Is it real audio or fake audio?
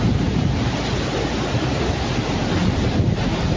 fake